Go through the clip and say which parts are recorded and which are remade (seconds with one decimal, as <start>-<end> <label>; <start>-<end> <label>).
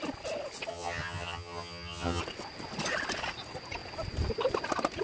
0.0-0.7 recorded; 0.7-2.2 remade; 2.2-5.0 recorded